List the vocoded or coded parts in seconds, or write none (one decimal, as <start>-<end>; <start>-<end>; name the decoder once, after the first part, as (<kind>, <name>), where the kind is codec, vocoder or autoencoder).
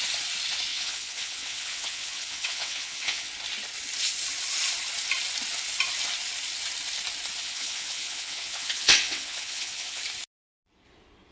0.7-3.3 (vocoder, WaveNeXt); 7.4-10.0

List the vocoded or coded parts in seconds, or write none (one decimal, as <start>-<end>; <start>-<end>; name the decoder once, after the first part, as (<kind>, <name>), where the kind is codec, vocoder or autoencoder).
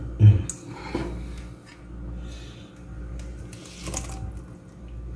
none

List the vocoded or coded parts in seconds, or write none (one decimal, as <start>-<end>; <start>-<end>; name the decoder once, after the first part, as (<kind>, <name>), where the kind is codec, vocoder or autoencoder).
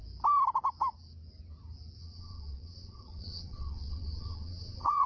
2.0-5.1 (vocoder, WaveNeXt)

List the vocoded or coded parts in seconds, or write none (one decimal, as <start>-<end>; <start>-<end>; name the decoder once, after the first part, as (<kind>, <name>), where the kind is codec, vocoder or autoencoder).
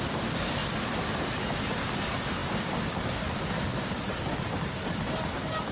none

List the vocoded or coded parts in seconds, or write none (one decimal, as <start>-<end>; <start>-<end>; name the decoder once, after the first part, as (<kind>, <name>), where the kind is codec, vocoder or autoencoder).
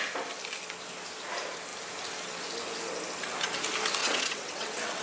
4.0-5.0 (vocoder, WaveNeXt)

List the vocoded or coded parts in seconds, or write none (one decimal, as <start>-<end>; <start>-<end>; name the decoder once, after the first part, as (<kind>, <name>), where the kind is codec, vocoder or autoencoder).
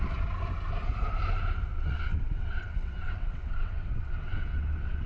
1.7-5.1 (vocoder, WaveNeXt)